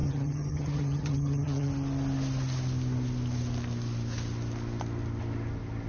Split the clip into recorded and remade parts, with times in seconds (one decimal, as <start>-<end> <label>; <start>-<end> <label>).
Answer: 0.0-1.7 remade; 1.7-5.9 recorded